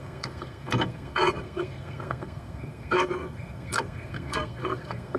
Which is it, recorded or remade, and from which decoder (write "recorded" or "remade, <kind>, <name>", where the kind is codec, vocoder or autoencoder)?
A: remade, codec, SNAC